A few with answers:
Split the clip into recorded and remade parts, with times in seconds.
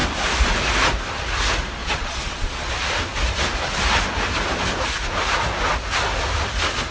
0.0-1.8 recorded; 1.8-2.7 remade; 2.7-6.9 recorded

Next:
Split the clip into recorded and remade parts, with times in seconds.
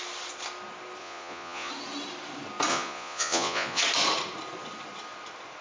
0.0-1.0 recorded; 1.0-1.7 remade; 1.7-2.7 recorded; 2.7-3.8 remade; 3.8-5.6 recorded